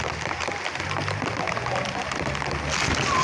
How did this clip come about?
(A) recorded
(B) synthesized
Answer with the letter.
A